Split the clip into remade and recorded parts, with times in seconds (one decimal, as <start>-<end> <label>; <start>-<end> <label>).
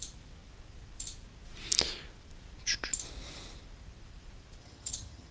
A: 0.0-4.6 recorded; 4.6-5.3 remade